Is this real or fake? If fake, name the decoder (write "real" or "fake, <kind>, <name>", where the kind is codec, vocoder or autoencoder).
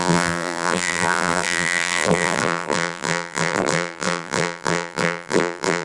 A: fake, vocoder, BigVGAN v2